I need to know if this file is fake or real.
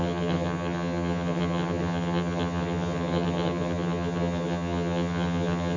fake